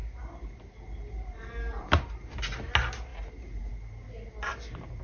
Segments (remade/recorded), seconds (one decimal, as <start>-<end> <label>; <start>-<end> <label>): 0.0-2.7 remade; 2.7-3.1 recorded; 3.1-3.7 remade; 3.7-5.0 recorded

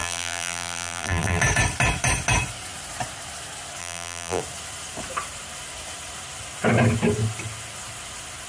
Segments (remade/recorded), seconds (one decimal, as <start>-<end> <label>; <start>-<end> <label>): 0.0-1.4 remade; 1.4-3.8 recorded; 3.8-4.4 remade; 4.4-8.5 recorded

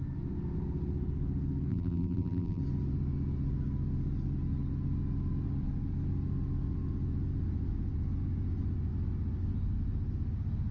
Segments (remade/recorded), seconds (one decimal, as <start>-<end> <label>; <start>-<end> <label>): 0.0-1.7 recorded; 1.7-2.6 remade; 2.6-10.7 recorded

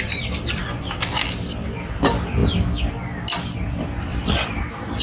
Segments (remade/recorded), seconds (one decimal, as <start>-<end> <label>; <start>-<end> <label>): 0.0-2.4 remade; 2.4-3.7 recorded; 3.7-5.0 remade

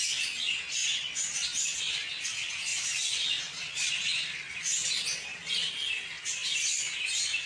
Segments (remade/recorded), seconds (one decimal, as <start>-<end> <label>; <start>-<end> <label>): 0.0-2.7 recorded; 2.7-4.0 remade; 4.0-5.3 recorded; 5.3-6.2 remade; 6.2-7.5 recorded